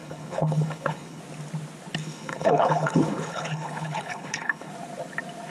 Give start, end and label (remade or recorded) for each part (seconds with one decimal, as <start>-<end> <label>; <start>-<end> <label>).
0.0-1.2 remade; 1.2-2.0 recorded; 2.0-4.7 remade; 4.7-5.5 recorded